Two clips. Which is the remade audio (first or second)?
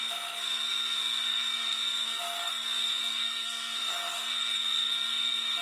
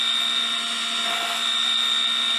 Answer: first